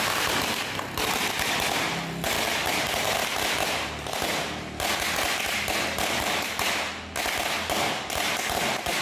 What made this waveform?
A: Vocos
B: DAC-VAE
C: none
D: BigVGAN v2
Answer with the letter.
C